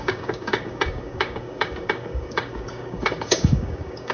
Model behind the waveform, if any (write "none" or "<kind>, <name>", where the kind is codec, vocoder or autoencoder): codec, DAC